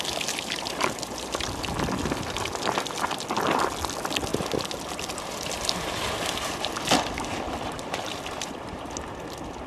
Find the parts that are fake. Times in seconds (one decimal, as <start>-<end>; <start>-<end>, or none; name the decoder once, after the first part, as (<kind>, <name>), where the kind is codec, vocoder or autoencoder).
none

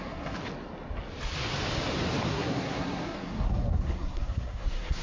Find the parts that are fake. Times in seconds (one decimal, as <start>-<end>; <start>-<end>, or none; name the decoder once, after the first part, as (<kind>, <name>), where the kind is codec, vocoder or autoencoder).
0.0-0.4 (codec, SNAC); 2.3-5.0

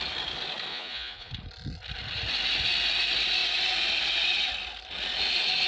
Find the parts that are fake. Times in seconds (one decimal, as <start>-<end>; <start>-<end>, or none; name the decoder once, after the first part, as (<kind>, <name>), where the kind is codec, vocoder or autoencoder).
0.7-1.3 (vocoder, Vocos)